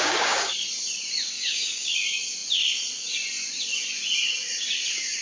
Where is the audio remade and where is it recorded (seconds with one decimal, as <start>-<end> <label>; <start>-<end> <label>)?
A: 0.0-0.5 remade; 0.5-1.3 recorded; 1.3-1.9 remade; 1.9-5.2 recorded